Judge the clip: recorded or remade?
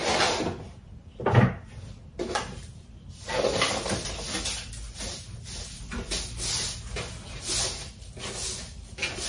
recorded